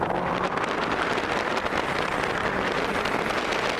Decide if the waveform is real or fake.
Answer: real